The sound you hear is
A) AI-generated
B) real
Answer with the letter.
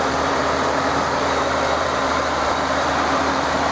A